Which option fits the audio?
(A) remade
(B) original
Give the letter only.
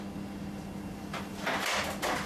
B